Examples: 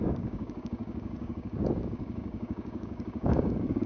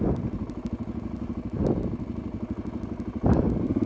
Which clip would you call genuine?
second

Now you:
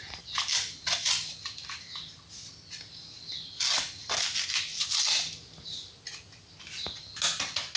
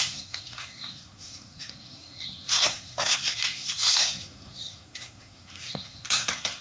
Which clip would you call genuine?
first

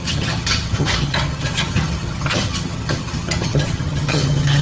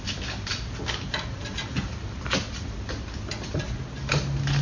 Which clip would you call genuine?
second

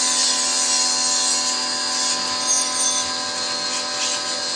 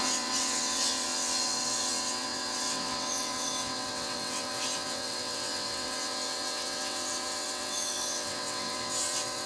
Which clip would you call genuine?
first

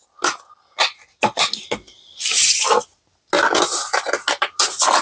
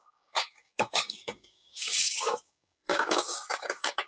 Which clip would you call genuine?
first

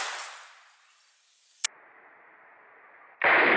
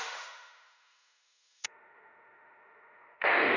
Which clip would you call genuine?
first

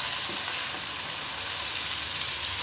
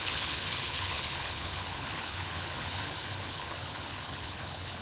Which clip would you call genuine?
first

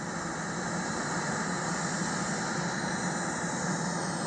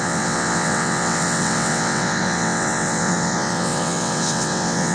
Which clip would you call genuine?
first